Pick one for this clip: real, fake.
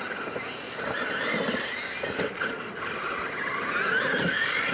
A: real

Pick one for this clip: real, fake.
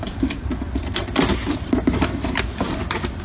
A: real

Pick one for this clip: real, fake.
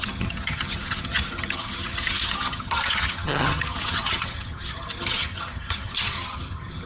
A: fake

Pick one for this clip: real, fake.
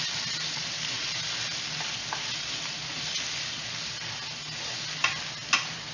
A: real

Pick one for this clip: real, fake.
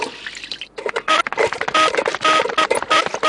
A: real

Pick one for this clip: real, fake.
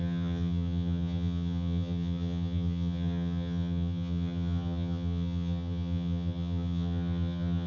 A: fake